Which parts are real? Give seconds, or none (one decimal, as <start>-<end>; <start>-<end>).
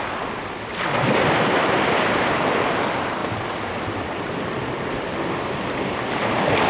0.0-6.7